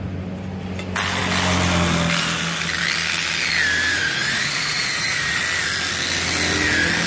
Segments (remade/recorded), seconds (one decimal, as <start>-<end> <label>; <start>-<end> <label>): 0.0-3.9 recorded; 3.9-5.4 remade; 5.4-7.1 recorded